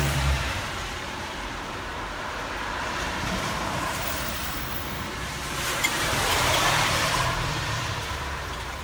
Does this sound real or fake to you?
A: fake